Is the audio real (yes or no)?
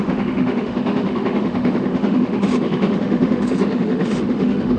no